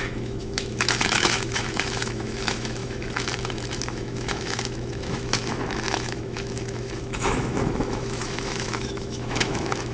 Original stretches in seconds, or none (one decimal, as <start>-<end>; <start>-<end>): none

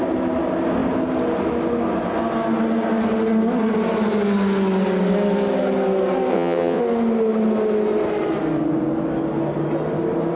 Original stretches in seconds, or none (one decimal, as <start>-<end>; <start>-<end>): 0.0-6.3; 6.8-10.4

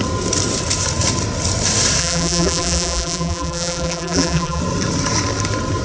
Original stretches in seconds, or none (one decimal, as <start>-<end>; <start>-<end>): 0.0-2.0; 4.6-5.8

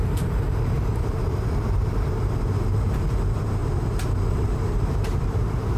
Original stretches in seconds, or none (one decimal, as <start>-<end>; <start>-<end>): 3.6-4.3